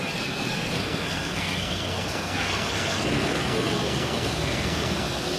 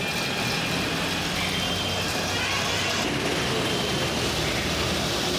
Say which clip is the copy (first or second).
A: first